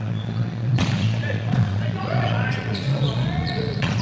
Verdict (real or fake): fake